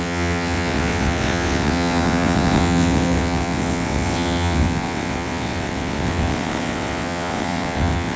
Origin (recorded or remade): remade